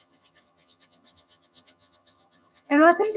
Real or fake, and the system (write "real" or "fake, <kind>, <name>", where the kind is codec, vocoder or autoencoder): fake, vocoder, HiFi-GAN